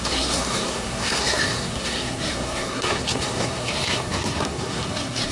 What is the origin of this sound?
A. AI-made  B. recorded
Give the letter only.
A